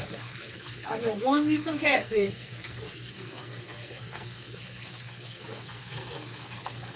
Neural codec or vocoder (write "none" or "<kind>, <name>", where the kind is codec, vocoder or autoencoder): codec, SNAC